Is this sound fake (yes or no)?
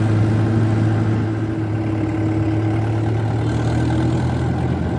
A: no